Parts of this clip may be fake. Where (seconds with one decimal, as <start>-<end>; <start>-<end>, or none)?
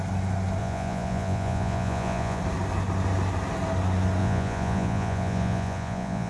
0.6-2.4; 4.2-6.3